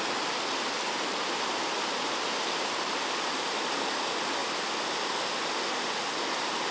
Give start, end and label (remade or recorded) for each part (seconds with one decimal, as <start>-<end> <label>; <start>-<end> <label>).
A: 0.0-6.7 recorded